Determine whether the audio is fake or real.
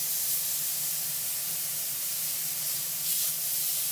fake